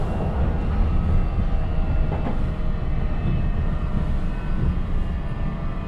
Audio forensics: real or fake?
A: real